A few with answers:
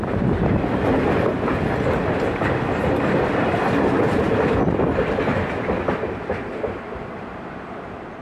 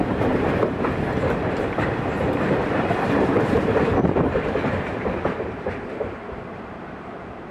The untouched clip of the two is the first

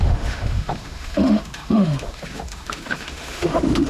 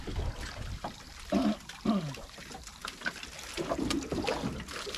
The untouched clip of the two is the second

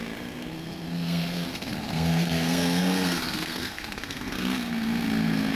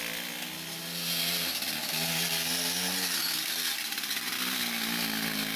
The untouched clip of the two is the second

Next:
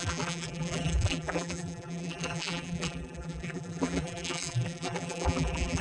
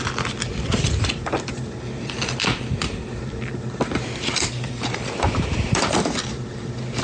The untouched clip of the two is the second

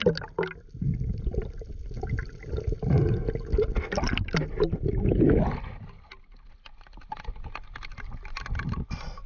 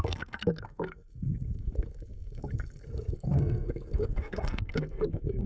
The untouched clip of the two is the first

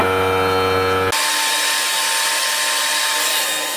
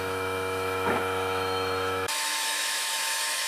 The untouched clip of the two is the first